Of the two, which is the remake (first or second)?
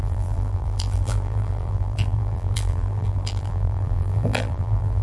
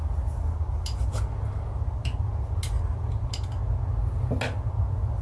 first